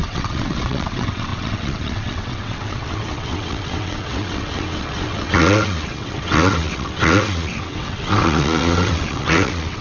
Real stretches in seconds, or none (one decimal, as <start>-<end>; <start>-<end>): none